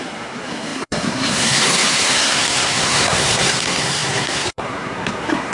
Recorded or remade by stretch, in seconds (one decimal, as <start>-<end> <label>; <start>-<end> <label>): 0.0-5.5 remade